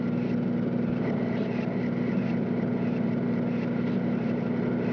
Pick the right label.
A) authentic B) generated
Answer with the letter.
A